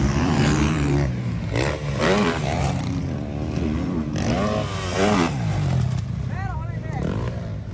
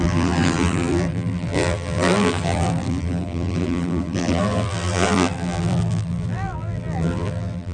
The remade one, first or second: second